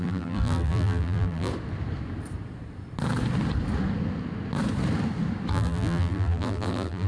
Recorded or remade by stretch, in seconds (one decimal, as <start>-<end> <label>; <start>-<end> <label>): 0.0-1.5 remade; 1.5-5.5 recorded; 5.5-7.1 remade